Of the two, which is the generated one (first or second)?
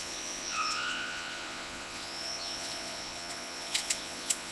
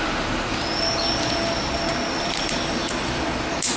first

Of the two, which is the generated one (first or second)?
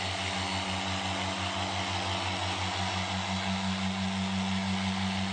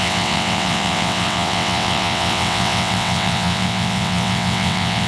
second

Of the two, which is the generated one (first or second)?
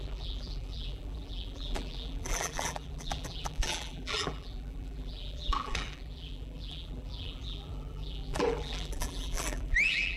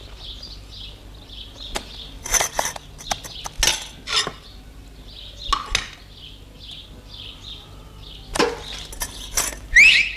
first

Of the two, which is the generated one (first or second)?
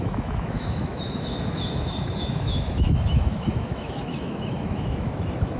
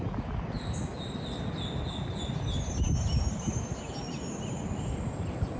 first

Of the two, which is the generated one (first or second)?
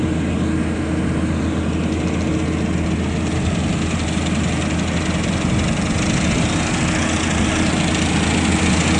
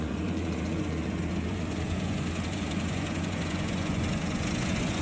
second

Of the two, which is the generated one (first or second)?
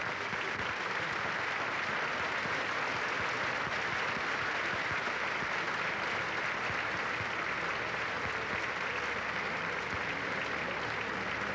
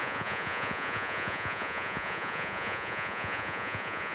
second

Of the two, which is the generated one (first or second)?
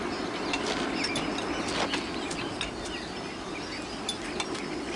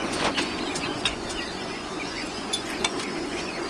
second